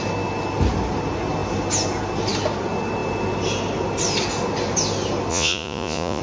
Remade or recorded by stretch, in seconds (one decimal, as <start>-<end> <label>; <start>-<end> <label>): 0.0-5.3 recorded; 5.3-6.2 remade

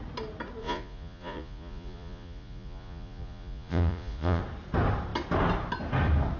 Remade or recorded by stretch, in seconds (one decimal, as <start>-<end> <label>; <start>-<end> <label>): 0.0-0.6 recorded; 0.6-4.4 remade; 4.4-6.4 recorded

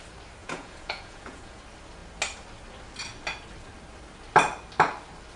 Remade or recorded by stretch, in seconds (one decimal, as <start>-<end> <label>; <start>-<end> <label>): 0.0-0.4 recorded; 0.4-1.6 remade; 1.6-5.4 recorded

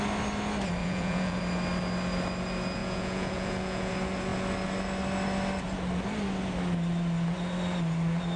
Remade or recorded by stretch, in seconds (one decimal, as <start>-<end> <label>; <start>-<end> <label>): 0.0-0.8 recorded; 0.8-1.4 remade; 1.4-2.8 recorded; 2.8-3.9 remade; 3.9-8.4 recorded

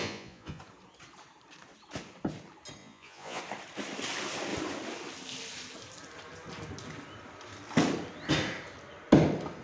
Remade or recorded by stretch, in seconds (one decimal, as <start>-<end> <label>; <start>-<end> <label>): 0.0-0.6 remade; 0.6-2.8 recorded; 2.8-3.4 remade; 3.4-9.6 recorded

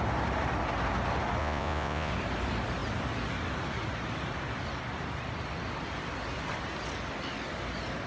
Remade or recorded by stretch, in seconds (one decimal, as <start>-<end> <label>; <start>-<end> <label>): 0.0-1.4 recorded; 1.4-2.1 remade; 2.1-8.1 recorded

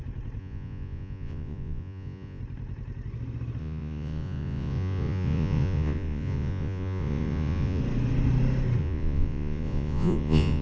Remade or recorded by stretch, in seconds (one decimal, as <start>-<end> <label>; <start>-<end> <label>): 0.0-0.4 recorded; 0.4-2.4 remade; 2.4-3.6 recorded; 3.6-7.8 remade; 7.8-8.8 recorded; 8.8-10.6 remade

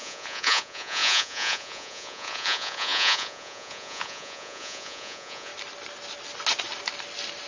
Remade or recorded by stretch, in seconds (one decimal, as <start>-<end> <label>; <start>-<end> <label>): 0.0-5.5 remade; 5.5-7.5 recorded